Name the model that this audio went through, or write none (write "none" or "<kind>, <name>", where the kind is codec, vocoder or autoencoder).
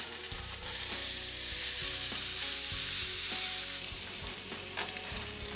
vocoder, BigVGAN v2